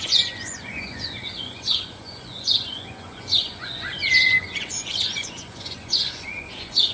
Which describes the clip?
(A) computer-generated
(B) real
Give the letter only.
A